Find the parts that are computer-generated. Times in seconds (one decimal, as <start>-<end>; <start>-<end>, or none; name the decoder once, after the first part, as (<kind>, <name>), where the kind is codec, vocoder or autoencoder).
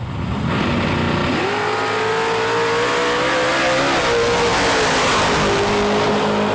none